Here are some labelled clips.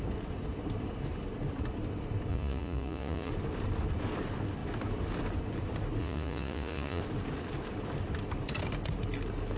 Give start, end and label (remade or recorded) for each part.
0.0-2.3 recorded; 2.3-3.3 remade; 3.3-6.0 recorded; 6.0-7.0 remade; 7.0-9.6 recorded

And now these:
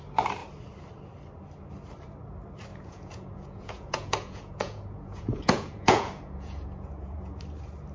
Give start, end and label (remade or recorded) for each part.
0.0-2.7 recorded; 2.7-7.4 remade; 7.4-7.9 recorded